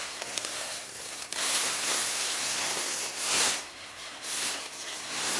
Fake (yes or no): yes